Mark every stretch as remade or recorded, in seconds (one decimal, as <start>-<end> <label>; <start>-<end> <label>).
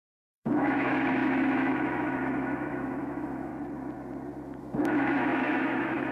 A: 0.0-3.5 remade; 3.5-4.6 recorded; 4.6-6.1 remade